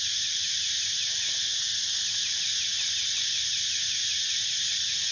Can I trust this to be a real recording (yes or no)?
yes